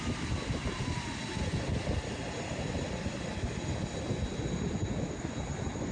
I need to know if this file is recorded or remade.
recorded